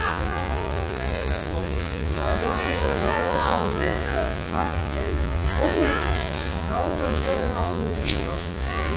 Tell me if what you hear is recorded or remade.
remade